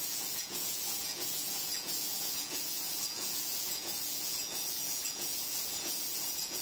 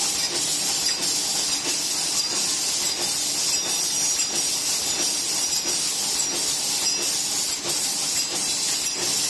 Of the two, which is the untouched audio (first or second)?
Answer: second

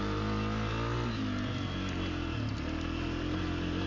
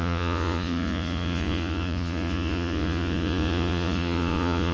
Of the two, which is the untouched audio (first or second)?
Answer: first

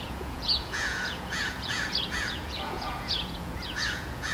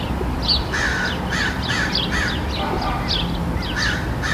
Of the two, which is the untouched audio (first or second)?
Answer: second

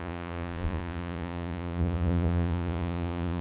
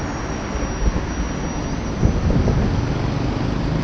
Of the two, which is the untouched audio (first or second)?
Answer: second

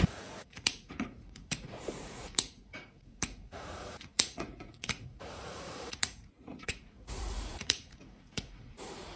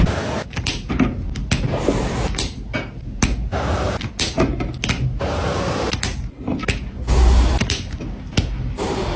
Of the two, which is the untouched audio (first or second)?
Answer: second